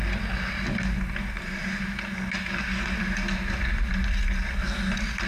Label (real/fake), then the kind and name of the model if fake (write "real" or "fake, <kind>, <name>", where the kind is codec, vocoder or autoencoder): real